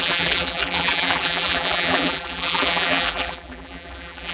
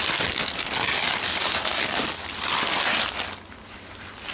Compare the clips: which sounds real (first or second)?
second